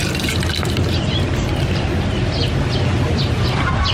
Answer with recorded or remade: recorded